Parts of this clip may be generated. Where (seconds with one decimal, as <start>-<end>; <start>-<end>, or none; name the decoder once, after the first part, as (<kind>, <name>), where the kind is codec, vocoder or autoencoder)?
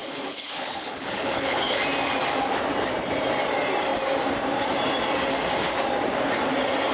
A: 0.0-1.8 (codec, HILCodec)